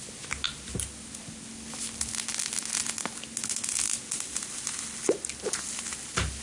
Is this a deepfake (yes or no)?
no